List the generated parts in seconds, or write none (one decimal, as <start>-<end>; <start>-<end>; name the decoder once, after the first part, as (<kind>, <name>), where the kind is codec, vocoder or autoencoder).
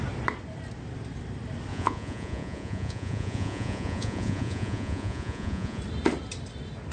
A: 1.7-5.8 (vocoder, Vocos)